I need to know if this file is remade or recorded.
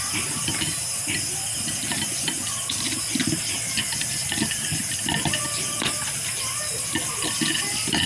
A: recorded